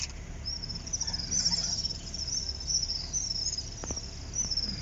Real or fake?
real